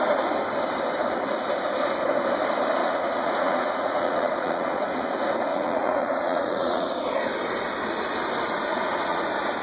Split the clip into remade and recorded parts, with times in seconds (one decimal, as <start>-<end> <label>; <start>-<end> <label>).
0.0-2.8 recorded; 2.8-5.1 remade; 5.1-5.5 recorded; 5.5-6.9 remade; 6.9-8.7 recorded; 8.7-9.2 remade; 9.2-9.6 recorded